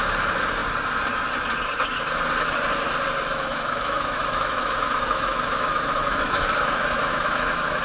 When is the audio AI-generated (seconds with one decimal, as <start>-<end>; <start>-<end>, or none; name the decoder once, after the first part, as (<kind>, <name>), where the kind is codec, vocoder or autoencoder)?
3.3-7.8 (autoencoder, DAC-VAE)